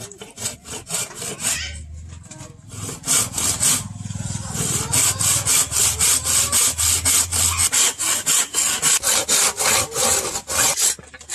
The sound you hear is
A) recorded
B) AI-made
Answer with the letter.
A